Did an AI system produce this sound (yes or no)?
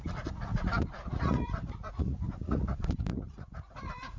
yes